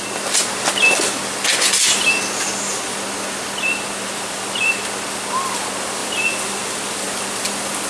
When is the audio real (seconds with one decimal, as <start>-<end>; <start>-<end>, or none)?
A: 0.0-7.9